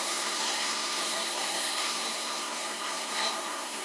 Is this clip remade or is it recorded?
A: remade